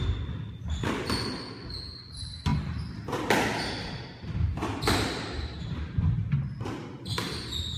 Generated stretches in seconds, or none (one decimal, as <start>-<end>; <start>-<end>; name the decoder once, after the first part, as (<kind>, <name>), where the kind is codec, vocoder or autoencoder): none